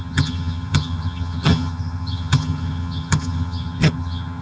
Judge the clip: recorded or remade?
remade